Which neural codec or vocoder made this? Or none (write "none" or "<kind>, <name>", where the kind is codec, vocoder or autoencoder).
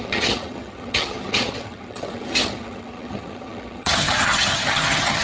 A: vocoder, HiFi-GAN